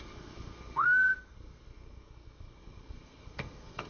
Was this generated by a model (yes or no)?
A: yes